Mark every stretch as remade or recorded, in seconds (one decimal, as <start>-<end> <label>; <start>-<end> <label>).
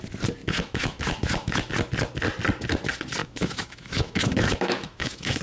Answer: 0.0-0.4 recorded; 0.4-1.7 remade; 1.7-3.2 recorded; 3.2-5.4 remade